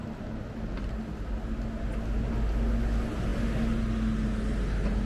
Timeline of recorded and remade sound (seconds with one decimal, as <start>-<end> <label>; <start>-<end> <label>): 0.0-5.1 recorded